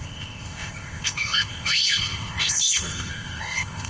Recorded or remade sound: remade